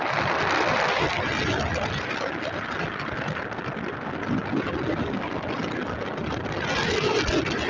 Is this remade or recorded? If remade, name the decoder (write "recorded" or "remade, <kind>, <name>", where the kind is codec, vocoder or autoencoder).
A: recorded